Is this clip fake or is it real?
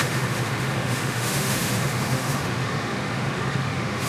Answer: fake